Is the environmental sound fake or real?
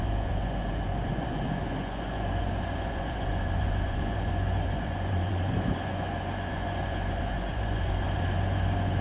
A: fake